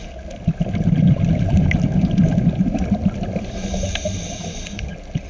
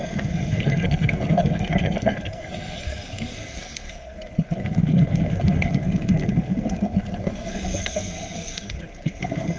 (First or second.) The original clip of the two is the first